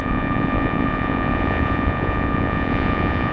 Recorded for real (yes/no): no